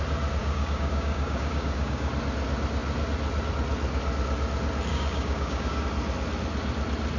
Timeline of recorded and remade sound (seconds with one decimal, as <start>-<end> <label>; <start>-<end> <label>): 0.0-0.4 recorded; 0.4-2.1 remade; 2.1-4.9 recorded; 4.9-5.8 remade; 5.8-7.2 recorded